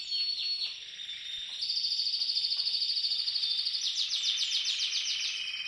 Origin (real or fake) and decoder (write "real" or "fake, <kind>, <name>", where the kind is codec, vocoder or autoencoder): real